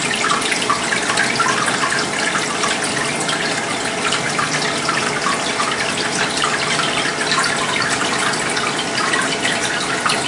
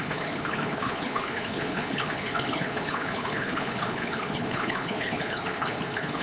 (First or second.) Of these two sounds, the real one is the first